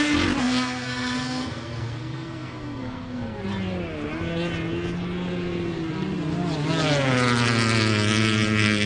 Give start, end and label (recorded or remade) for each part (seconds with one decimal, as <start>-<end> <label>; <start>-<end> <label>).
0.0-0.4 recorded; 0.4-3.4 remade; 3.4-8.9 recorded